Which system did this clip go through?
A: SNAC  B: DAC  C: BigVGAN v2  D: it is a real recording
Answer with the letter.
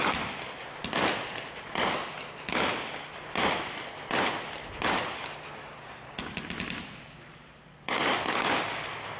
D